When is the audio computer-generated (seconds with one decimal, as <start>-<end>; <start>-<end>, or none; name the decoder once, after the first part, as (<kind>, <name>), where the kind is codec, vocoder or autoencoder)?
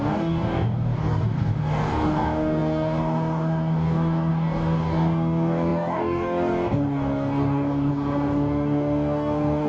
0.0-9.7 (codec, DAC)